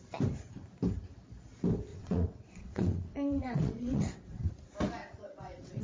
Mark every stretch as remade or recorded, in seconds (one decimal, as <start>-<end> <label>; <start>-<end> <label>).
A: 0.0-1.9 recorded; 1.9-4.5 remade; 4.5-5.0 recorded; 5.0-5.8 remade